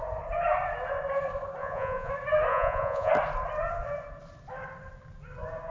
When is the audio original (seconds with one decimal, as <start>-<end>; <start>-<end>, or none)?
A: 0.0-1.6; 2.1-2.5; 3.1-5.7